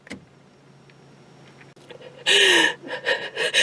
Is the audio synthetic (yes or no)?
no